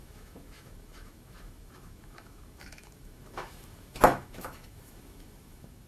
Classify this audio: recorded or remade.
remade